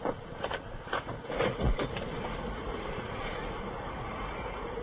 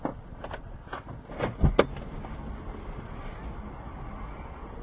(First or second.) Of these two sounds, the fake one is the first